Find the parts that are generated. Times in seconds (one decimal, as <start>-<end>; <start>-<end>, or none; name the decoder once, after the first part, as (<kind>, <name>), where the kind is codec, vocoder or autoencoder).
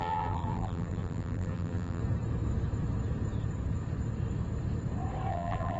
0.0-2.0 (vocoder, BigVGAN v2); 5.3-5.8